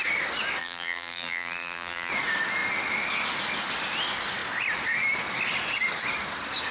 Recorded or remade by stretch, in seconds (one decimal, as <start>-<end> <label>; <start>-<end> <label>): 0.0-0.6 recorded; 0.6-2.1 remade; 2.1-6.7 recorded